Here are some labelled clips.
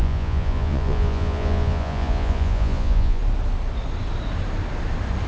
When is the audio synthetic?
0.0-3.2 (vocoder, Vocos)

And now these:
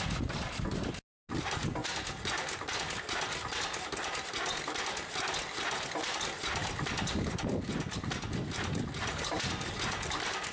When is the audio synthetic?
none

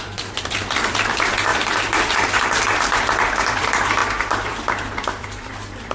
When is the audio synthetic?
0.0-5.9 (vocoder, BigVGAN v2)

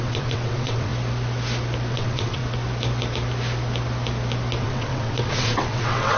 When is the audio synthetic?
0.0-0.9 (vocoder, WaveNeXt); 1.9-2.4; 4.6-6.2

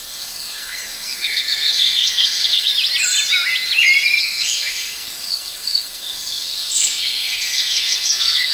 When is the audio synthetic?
0.0-2.7 (codec, SNAC); 4.2-8.5